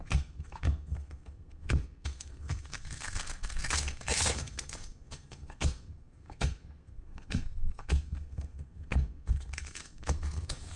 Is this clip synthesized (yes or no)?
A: yes